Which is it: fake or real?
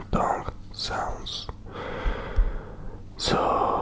real